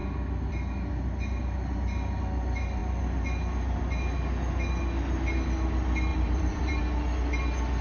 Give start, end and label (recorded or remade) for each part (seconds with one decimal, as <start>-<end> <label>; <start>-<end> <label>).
0.0-6.1 recorded; 6.1-6.8 remade; 6.8-7.8 recorded

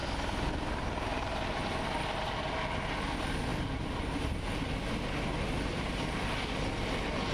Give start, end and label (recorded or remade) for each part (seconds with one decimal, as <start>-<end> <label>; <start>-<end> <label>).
0.0-7.3 recorded

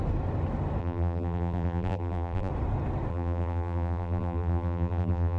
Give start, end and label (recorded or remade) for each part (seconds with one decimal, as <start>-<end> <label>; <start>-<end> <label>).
0.0-0.8 recorded; 0.8-2.5 remade; 2.5-3.1 recorded; 3.1-5.4 remade

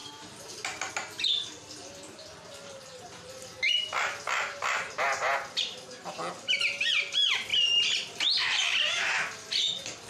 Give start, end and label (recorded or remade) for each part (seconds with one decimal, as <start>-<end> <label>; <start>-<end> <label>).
0.0-10.1 recorded